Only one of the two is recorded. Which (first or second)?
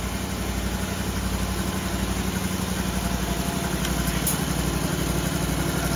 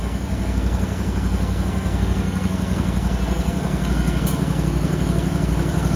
first